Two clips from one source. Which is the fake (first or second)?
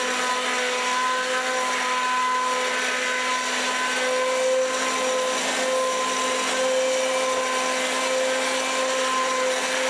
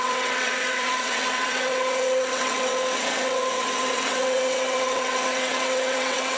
second